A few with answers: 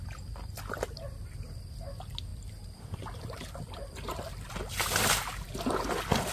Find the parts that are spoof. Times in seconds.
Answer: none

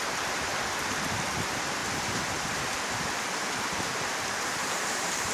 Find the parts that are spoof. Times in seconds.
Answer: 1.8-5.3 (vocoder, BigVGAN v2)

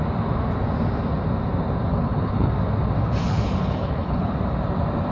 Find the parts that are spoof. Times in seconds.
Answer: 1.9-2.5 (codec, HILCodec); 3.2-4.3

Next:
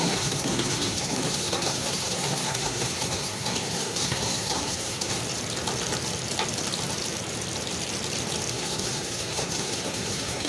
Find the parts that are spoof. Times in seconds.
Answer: 0.0-5.2 (codec, SNAC); 8.5-10.5

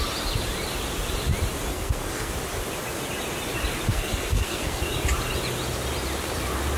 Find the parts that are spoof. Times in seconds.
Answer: 1.7-2.3 (codec, SNAC); 3.9-4.8